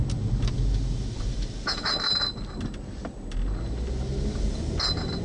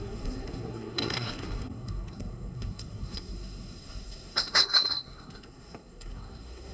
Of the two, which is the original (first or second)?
first